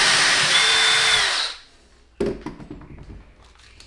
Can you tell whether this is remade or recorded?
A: recorded